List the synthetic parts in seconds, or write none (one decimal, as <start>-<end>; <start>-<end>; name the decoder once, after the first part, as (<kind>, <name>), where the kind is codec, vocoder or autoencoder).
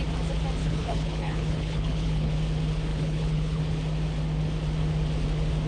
0.6-2.3 (codec, HILCodec); 2.9-3.6